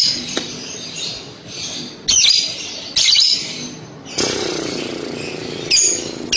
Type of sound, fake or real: real